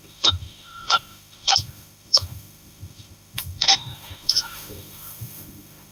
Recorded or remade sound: remade